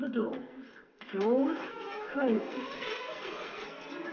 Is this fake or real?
fake